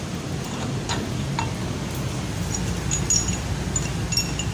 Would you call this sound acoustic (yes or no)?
yes